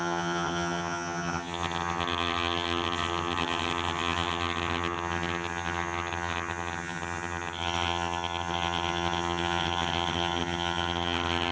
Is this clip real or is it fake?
fake